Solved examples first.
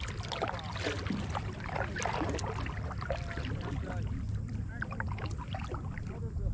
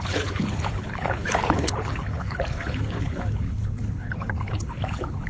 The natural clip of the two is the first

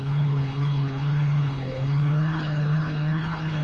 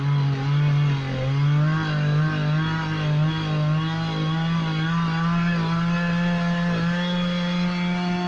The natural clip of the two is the second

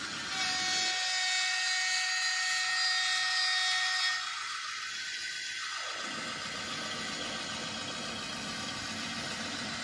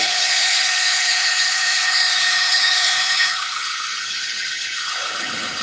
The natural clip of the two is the first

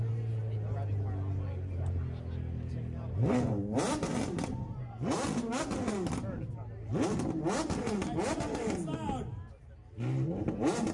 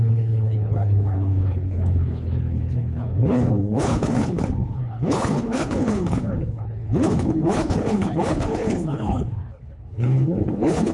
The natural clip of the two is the first